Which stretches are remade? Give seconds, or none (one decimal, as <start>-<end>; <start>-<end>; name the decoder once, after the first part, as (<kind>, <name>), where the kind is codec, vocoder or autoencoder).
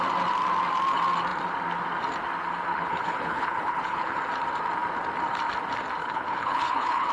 2.7-4.2 (codec, HILCodec); 6.0-7.1